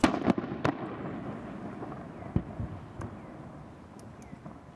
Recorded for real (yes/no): yes